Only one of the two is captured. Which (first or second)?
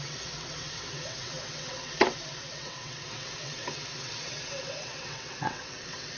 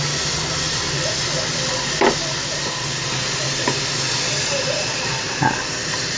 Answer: second